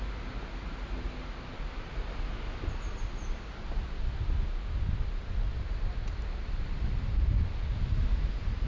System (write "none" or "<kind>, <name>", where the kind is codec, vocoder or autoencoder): none